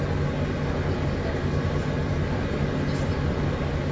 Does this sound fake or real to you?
real